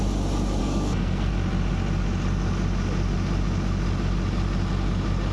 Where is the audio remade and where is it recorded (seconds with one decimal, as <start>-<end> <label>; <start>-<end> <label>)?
0.0-0.6 recorded; 0.6-1.3 remade; 1.3-5.3 recorded